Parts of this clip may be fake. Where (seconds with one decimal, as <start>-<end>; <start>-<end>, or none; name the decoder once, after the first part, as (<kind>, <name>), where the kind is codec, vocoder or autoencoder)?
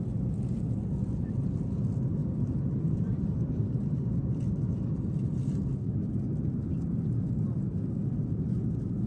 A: 2.2-3.5 (vocoder, BigVGAN v2)